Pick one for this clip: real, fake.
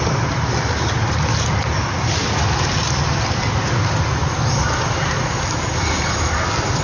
real